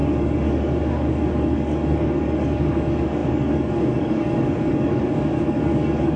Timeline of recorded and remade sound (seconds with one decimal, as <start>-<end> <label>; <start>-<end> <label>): 0.0-6.2 remade